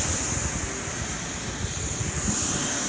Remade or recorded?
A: recorded